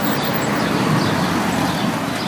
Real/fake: real